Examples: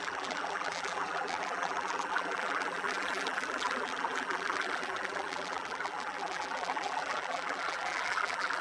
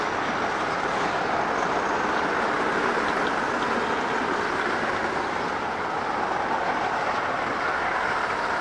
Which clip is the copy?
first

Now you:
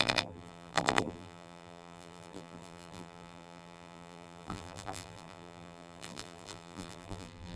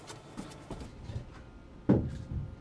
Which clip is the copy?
first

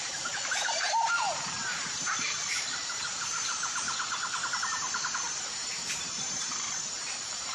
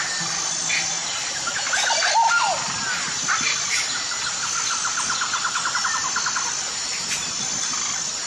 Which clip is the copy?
first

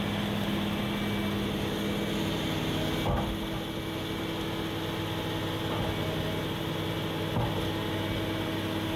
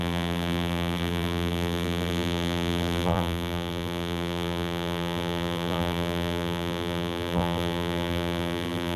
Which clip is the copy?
second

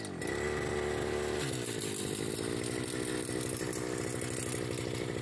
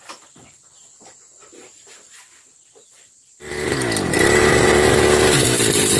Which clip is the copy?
second